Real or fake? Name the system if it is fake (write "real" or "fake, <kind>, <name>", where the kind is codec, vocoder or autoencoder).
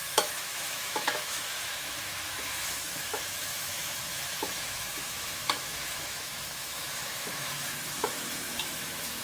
fake, autoencoder, DAC-VAE